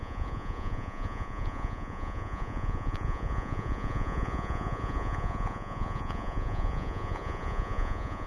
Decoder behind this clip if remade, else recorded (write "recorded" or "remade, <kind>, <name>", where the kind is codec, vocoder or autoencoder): remade, vocoder, Vocos